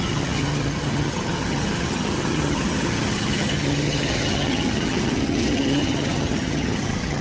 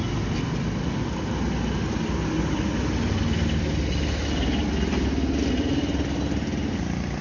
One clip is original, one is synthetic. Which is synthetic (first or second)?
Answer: first